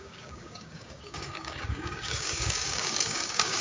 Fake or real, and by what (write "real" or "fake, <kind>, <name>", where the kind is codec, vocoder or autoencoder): fake, codec, DAC